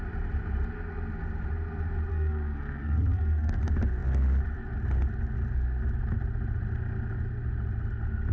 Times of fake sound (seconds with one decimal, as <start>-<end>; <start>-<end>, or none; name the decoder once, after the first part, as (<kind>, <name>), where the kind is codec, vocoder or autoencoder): 2.1-3.6 (codec, SNAC)